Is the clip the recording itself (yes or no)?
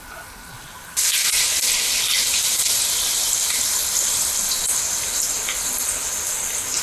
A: yes